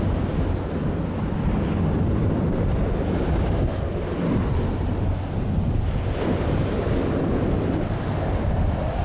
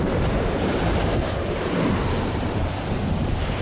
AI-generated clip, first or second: second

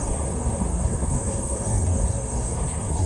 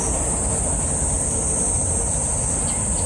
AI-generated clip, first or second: first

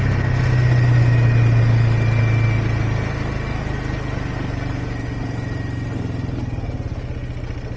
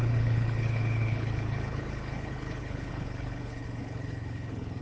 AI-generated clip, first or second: second